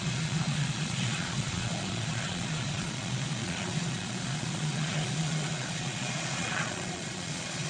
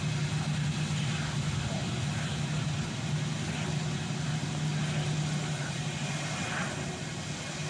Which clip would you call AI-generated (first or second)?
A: first